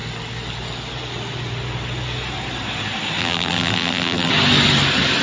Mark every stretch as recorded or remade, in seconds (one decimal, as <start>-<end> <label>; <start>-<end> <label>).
0.0-3.2 recorded; 3.2-4.3 remade; 4.3-5.2 recorded